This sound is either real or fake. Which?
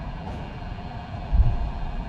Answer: fake